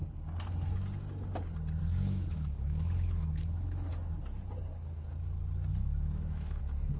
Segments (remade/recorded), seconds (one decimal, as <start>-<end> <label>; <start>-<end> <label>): 0.0-1.8 recorded; 1.8-3.9 remade; 3.9-5.7 recorded; 5.7-6.6 remade; 6.6-7.0 recorded

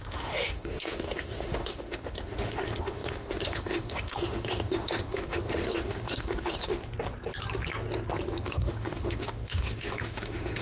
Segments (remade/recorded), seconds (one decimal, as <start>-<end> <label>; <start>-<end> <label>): 0.0-6.9 remade; 6.9-8.4 recorded; 8.4-10.6 remade

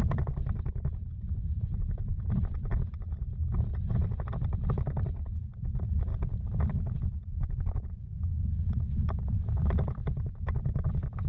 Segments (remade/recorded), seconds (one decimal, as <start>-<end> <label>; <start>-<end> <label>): 0.0-11.3 recorded

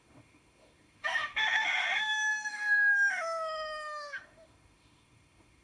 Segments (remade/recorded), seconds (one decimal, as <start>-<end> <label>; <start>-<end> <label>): 0.0-5.6 remade

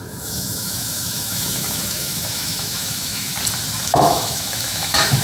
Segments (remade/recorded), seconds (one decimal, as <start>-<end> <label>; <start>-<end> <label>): 0.0-3.3 remade; 3.3-3.8 recorded; 3.8-5.2 remade

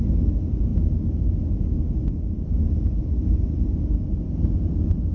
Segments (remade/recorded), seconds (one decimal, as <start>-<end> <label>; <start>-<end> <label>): 0.0-5.1 recorded

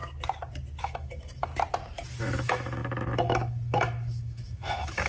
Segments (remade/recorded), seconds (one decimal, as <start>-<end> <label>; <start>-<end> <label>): 0.0-0.8 recorded; 0.8-1.5 remade; 1.5-2.2 recorded; 2.2-5.1 remade

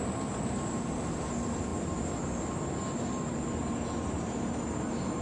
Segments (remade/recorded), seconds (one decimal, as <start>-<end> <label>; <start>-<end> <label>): 0.0-5.2 recorded